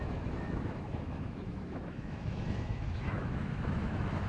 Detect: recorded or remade remade